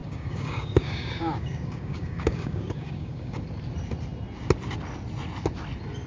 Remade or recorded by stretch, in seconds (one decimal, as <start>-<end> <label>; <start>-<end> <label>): 0.0-3.4 remade; 3.4-6.1 recorded